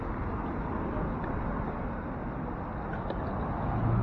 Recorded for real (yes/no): yes